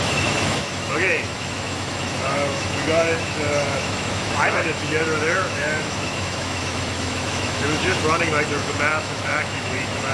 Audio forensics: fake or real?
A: fake